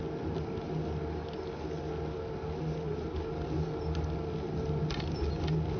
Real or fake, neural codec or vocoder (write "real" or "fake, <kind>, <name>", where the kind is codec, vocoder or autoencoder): real